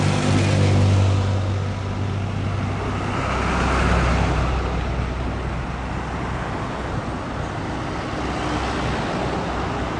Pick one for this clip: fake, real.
real